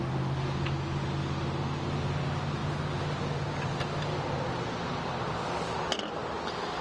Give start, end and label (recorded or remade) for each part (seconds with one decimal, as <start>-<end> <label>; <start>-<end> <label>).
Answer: 0.0-6.8 recorded